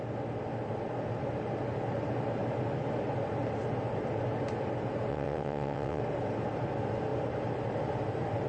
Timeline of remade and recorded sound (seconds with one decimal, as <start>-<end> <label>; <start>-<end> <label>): 0.0-5.1 recorded; 5.1-6.0 remade; 6.0-8.5 recorded